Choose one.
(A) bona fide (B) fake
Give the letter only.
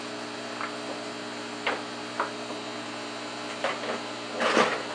A